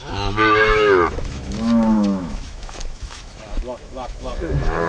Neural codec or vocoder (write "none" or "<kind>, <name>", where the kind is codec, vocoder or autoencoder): autoencoder, DAC-VAE